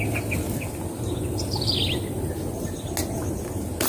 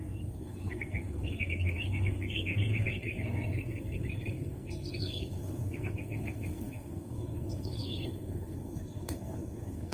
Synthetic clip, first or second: second